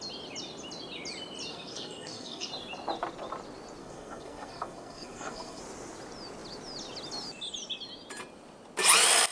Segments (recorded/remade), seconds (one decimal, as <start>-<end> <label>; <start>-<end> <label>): 0.0-1.5 recorded; 1.5-2.5 remade; 2.5-3.8 recorded; 3.8-5.6 remade; 5.6-9.3 recorded